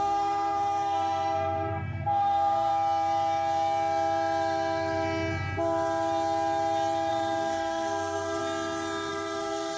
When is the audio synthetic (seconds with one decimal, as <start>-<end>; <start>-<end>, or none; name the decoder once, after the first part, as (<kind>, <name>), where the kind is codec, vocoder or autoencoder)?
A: 0.0-2.7 (codec, SNAC); 7.1-8.4; 9.1-9.8